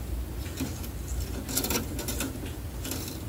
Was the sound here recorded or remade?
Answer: recorded